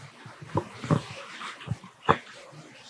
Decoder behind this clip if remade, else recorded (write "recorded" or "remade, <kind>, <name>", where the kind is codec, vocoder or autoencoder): remade, vocoder, BigVGAN v2